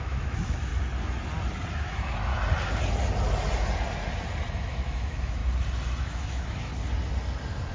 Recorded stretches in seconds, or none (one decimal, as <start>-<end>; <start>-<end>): 0.7-1.8; 2.3-4.5; 5.4-6.0; 6.7-7.7